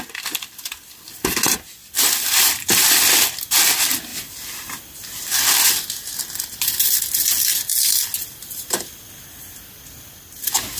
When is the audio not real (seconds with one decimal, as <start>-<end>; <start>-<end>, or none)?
none